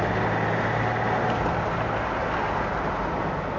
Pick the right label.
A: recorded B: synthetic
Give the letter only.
A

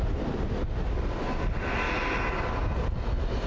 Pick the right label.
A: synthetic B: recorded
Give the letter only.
B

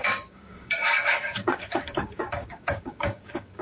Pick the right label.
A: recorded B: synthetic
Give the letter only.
B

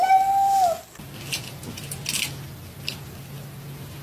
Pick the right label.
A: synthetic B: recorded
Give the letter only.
B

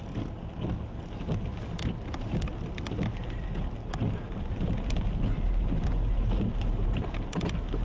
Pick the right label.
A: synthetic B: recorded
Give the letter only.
B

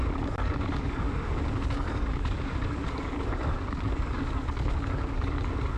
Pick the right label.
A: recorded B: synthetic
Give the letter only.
B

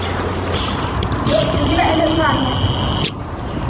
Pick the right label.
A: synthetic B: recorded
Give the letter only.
B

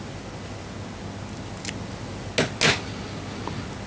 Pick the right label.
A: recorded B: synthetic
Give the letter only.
A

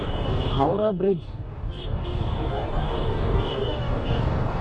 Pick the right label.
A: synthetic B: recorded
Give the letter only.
A